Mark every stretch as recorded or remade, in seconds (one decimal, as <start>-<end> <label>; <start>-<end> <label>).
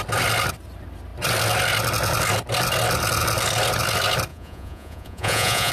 0.0-4.3 recorded; 4.3-5.7 remade